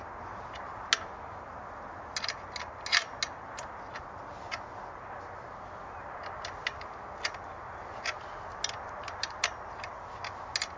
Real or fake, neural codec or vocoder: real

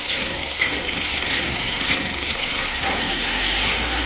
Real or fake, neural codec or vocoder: fake, codec, SNAC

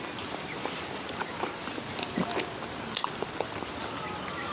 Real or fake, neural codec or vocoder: real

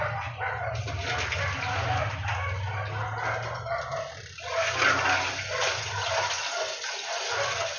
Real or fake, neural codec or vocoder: real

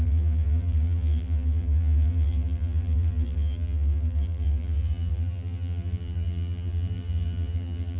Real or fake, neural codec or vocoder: fake, vocoder, BigVGAN v2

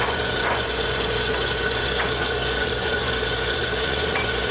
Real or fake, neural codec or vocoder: fake, vocoder, Vocos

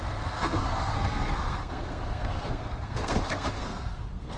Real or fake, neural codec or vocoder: fake, codec, SNAC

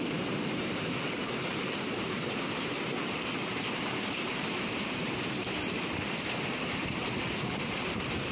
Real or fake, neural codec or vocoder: fake, vocoder, BigVGAN v2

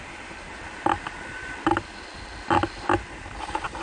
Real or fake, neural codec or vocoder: real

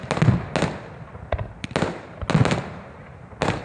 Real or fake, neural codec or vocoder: real